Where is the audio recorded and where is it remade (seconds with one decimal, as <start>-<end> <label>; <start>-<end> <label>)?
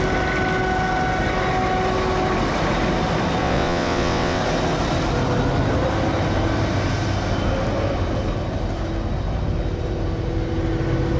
0.0-3.4 recorded; 3.4-4.4 remade; 4.4-11.2 recorded